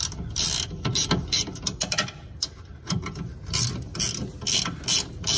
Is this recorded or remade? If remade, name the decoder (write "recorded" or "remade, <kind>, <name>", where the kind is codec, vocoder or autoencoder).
recorded